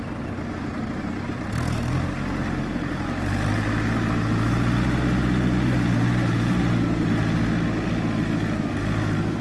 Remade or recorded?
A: recorded